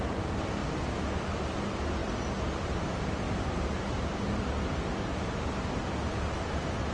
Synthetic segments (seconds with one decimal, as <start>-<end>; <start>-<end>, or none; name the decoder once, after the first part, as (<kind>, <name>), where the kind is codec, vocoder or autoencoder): none

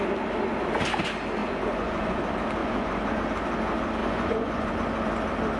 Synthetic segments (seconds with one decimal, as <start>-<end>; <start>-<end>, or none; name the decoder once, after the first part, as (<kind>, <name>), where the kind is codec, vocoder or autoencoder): 1.4-2.2 (vocoder, Vocos); 2.6-3.2; 4.0-4.7

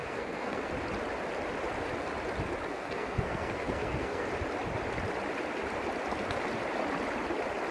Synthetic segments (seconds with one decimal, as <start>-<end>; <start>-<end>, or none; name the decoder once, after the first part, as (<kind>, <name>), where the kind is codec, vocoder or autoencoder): 0.0-0.7 (codec, SNAC); 2.7-4.3

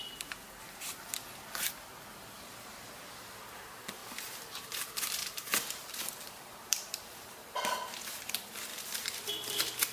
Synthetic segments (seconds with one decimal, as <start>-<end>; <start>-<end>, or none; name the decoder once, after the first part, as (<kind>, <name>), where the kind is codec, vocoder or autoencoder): 4.0-4.6 (vocoder, BigVGAN v2); 5.2-7.6; 8.7-9.3

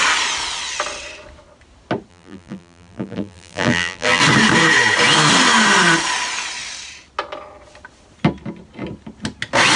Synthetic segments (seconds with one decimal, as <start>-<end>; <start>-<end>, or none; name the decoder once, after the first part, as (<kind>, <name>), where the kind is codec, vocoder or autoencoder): 2.1-4.2 (vocoder, BigVGAN v2)